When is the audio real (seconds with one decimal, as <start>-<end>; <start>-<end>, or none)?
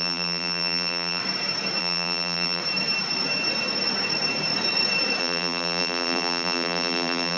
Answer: 1.2-1.8; 2.6-5.2